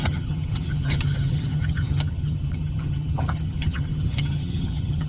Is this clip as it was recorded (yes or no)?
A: no